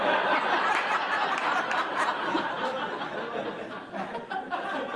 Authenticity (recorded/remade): recorded